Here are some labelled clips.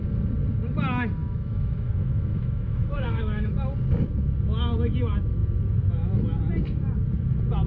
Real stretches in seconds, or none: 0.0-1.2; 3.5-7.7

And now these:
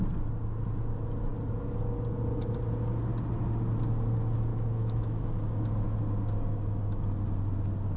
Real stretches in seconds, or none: 0.0-4.5; 5.4-8.0

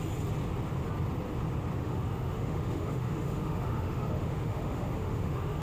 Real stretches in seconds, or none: 0.0-1.8

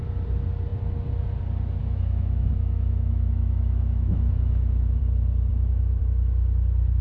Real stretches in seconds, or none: 0.0-1.8; 5.0-5.5; 6.0-7.0

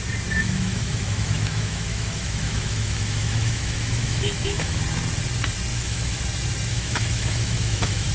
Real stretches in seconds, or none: 0.0-0.4; 4.8-5.7; 6.2-6.7

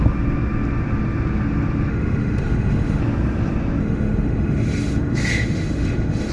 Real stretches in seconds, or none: 0.0-1.9; 3.0-3.8